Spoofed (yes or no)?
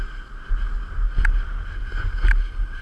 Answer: no